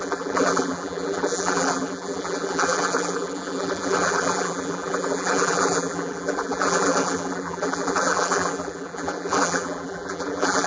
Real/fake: fake